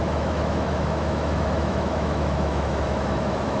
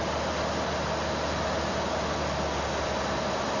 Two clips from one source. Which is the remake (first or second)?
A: first